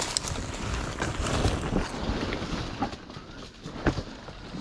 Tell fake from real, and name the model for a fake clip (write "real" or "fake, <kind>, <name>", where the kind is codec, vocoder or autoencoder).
real